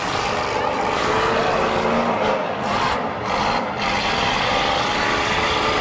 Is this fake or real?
real